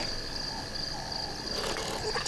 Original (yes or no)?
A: yes